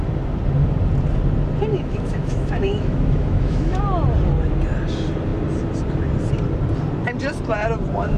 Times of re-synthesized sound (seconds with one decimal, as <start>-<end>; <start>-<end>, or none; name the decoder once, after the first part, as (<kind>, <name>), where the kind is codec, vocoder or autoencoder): 1.7-3.8 (autoencoder, DAC-VAE)